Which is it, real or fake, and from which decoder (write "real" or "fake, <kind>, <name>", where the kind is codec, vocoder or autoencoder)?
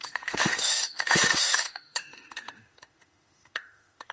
fake, autoencoder, DAC-VAE